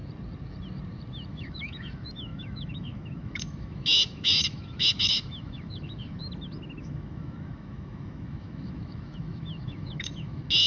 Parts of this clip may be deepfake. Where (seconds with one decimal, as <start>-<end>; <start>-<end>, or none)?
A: 1.3-6.2; 6.8-10.7